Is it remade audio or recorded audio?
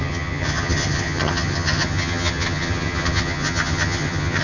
remade